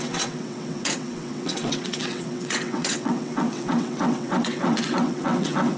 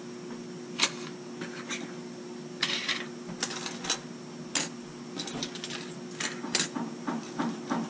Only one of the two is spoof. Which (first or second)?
first